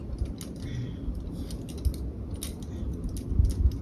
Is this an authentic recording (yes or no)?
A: yes